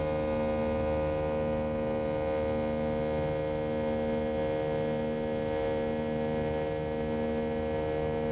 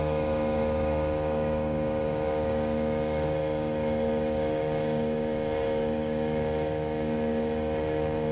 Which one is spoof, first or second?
second